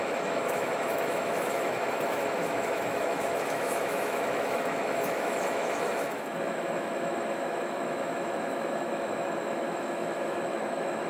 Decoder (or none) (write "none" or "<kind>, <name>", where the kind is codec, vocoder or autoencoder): autoencoder, DAC-VAE